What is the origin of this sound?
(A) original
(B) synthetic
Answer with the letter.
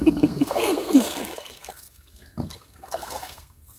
B